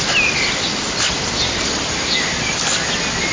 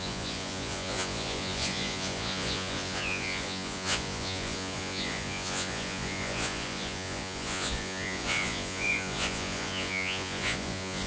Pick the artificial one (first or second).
second